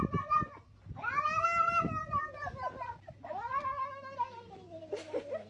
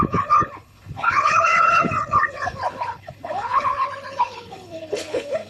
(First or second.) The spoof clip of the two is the second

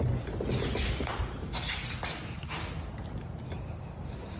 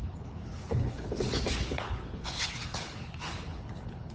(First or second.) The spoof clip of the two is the second